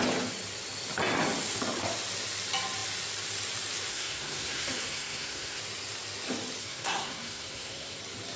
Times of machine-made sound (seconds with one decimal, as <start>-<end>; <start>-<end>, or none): 3.9-5.6; 6.6-8.0